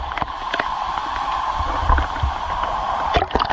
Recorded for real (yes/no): yes